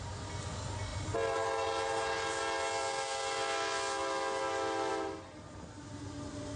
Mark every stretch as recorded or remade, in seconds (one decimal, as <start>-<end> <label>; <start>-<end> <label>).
0.0-6.6 recorded

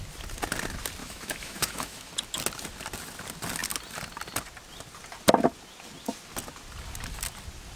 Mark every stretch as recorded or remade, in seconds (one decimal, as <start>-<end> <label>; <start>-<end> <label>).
0.0-1.0 recorded; 1.0-2.1 remade; 2.1-7.8 recorded